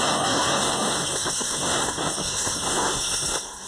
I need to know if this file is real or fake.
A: fake